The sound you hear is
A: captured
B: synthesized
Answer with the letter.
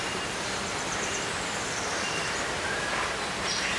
B